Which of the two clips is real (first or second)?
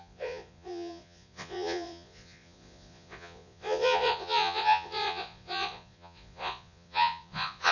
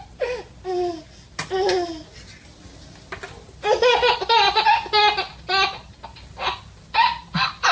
second